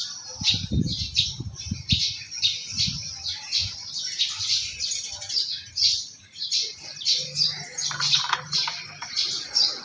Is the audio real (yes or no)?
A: no